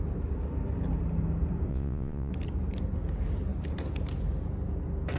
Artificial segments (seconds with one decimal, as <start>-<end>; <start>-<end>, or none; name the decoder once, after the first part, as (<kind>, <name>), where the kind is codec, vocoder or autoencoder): 1.7-2.3 (vocoder, Vocos)